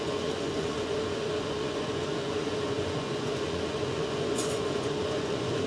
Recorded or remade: remade